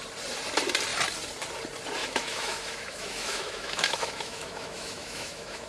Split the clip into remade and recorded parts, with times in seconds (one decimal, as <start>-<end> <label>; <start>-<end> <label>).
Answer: 0.0-2.0 recorded; 2.0-5.7 remade